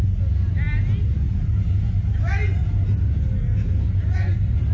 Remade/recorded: recorded